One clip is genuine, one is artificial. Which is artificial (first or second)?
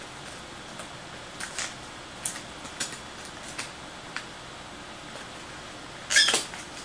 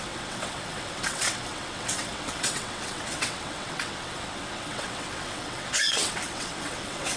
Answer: second